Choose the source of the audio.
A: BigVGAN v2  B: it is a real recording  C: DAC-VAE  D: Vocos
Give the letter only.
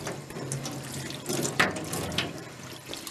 A